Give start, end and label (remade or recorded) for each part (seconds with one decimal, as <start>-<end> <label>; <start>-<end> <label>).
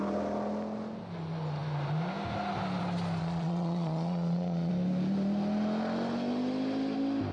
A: 0.0-3.2 recorded; 3.2-4.7 remade; 4.7-7.3 recorded